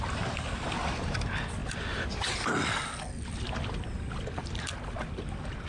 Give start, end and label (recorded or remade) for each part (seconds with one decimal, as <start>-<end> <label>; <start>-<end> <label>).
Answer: 0.0-5.7 recorded